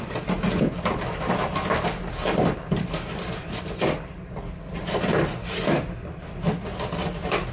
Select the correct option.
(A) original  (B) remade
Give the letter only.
A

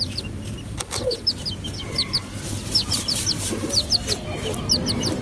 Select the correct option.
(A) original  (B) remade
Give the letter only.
A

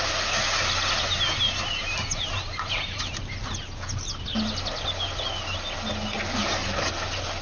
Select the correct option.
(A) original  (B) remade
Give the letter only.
A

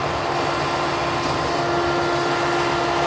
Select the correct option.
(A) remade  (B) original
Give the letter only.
B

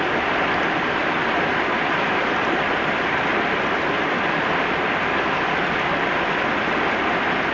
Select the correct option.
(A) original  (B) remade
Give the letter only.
A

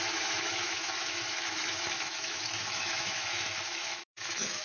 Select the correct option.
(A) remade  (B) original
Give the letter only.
A